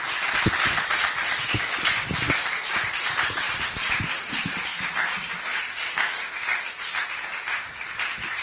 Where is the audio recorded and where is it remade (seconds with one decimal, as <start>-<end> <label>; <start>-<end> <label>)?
0.0-5.5 recorded; 5.5-6.3 remade; 6.3-8.4 recorded